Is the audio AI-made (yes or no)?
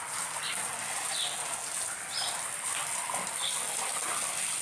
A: no